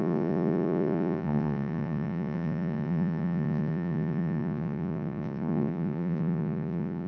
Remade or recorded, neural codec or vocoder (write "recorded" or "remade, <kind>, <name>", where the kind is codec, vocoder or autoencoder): remade, vocoder, Vocos